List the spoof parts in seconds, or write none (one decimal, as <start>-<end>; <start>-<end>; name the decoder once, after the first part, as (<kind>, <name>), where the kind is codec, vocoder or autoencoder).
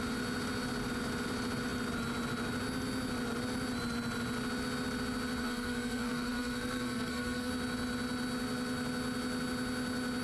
5.4-7.5 (codec, SNAC)